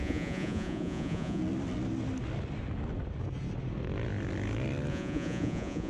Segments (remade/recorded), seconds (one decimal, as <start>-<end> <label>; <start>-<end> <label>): 0.0-1.4 remade; 1.4-4.9 recorded; 4.9-5.9 remade